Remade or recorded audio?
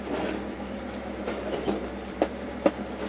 recorded